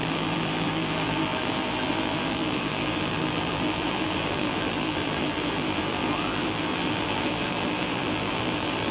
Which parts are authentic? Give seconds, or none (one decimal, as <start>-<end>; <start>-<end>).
none